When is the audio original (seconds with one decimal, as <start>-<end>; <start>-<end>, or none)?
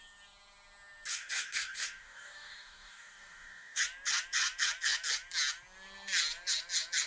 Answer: 0.0-1.1; 3.8-7.1